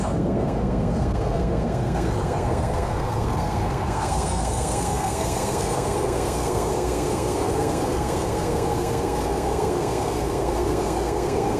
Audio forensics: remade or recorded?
remade